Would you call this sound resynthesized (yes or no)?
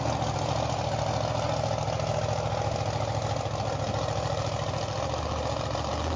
no